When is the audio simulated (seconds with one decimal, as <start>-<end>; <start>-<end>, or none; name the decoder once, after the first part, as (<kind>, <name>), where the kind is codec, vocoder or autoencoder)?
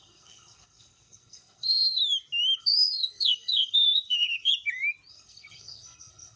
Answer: 0.0-2.0 (codec, SNAC); 2.6-4.5; 5.1-6.4